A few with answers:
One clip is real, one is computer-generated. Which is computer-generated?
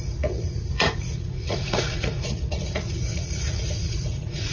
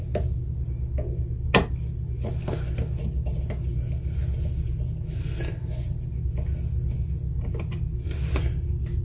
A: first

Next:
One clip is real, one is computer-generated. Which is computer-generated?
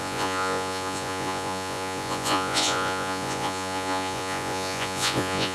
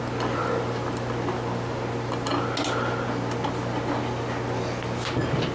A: first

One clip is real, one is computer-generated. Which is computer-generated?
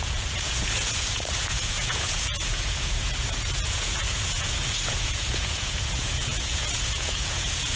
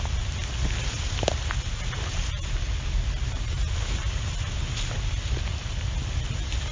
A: first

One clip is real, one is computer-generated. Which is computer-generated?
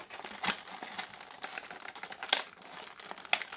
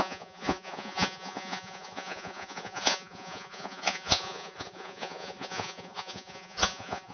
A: second